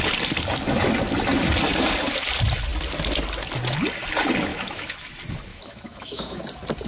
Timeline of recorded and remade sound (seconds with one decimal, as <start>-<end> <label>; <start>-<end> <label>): 0.0-4.5 recorded; 4.5-5.1 remade; 5.1-5.5 recorded; 5.5-6.4 remade; 6.4-6.9 recorded

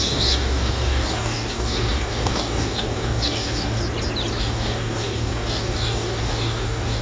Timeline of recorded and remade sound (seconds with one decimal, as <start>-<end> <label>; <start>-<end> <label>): 0.0-3.8 remade; 3.8-4.4 recorded; 4.4-7.0 remade

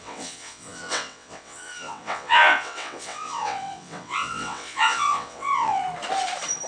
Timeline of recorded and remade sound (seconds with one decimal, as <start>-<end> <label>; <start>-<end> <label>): 0.0-5.8 remade; 5.8-6.7 recorded

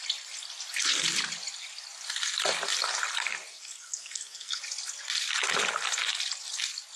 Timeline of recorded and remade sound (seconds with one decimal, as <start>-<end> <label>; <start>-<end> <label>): 0.0-3.5 recorded; 3.5-4.6 remade; 4.6-7.0 recorded

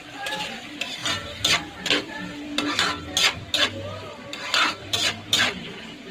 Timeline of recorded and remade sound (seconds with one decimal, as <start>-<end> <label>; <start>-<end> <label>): 0.0-1.0 remade; 1.0-4.7 recorded; 4.7-6.1 remade

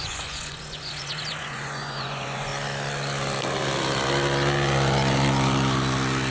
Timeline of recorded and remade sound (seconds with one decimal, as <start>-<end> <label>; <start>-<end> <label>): 0.0-2.5 remade; 2.5-6.3 recorded

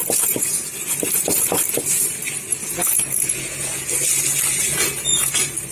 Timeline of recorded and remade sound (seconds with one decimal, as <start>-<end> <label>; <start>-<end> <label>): 0.0-0.7 remade; 0.7-2.5 recorded; 2.5-3.8 remade; 3.8-4.7 recorded; 4.7-5.3 remade; 5.3-5.7 recorded